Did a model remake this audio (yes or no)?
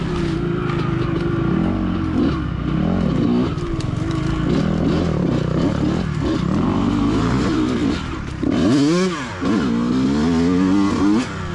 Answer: no